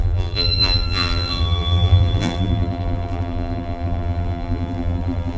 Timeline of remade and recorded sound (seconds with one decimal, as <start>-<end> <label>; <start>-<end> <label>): 0.0-5.4 remade